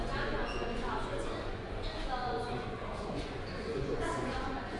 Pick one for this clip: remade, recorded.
remade